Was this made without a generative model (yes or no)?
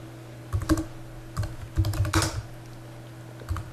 yes